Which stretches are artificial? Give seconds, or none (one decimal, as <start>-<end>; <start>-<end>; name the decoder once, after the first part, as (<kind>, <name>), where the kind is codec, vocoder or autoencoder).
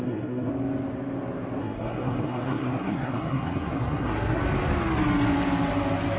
0.0-0.5 (codec, SNAC); 1.6-4.4